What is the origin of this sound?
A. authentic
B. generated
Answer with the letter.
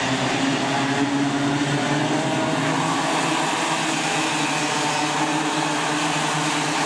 A